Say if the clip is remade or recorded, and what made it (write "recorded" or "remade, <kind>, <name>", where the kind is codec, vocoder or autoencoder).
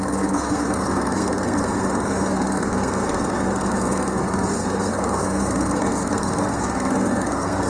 remade, codec, SNAC